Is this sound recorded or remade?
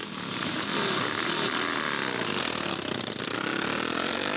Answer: recorded